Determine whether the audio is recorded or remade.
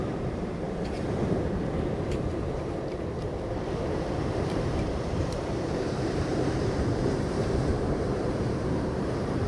remade